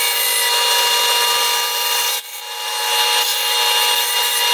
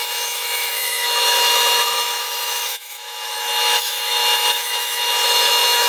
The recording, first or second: first